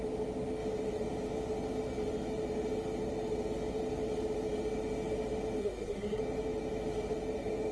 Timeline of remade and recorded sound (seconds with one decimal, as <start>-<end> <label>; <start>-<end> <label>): 0.0-5.6 recorded; 5.6-6.2 remade; 6.2-7.7 recorded

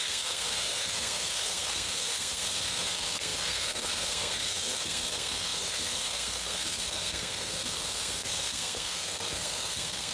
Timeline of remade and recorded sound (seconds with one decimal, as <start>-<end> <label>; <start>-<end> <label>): 0.0-10.1 remade